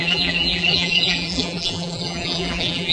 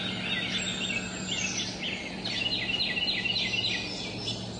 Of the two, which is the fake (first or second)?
first